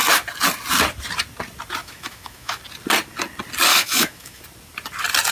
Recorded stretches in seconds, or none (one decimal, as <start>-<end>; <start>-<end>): 0.0-1.8; 2.6-3.7; 4.4-5.3